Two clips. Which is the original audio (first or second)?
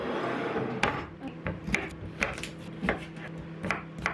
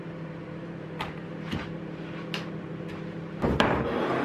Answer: first